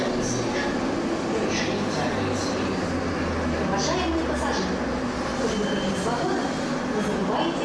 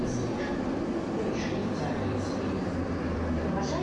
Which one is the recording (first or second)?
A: first